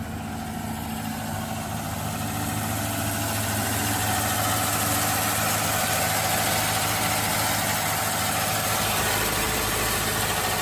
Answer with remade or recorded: recorded